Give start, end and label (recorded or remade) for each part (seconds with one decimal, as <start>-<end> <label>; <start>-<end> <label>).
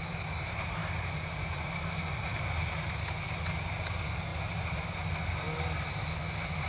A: 0.0-6.7 recorded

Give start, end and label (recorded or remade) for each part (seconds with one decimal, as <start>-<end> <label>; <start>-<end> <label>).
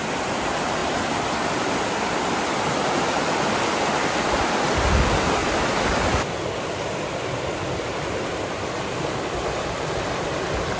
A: 0.0-10.8 recorded